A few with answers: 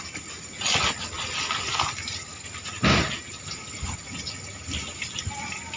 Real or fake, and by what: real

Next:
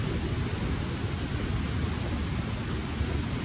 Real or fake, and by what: real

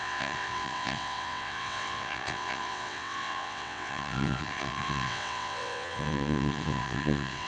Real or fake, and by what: fake, vocoder, WaveNeXt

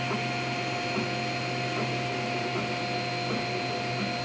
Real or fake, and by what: real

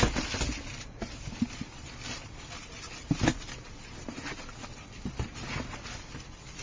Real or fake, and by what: real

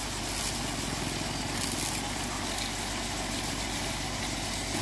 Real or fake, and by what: real